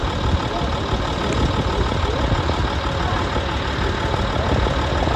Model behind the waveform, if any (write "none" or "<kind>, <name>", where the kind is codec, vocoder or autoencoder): none